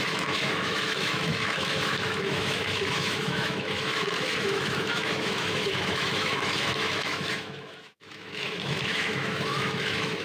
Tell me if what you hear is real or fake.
fake